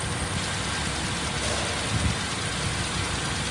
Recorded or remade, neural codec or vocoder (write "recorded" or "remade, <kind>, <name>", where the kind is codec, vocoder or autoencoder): recorded